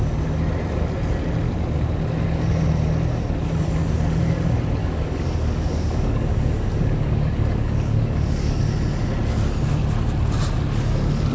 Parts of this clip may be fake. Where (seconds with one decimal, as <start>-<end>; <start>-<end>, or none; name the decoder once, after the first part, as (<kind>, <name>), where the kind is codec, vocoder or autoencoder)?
4.8-8.6 (codec, DAC)